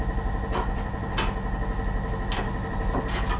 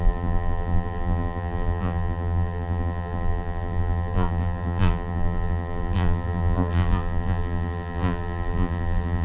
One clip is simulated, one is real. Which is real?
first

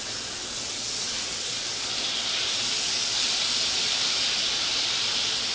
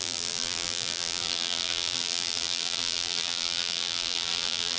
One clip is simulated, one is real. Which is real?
first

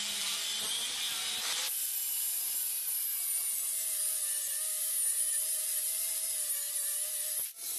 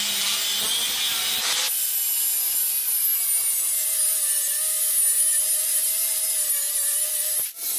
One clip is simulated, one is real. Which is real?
second